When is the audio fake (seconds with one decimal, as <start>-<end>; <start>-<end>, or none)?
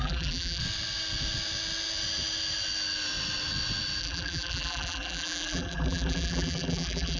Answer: 0.0-0.6; 4.0-7.2